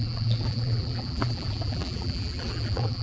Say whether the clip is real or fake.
fake